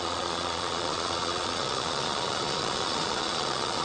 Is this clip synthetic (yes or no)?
yes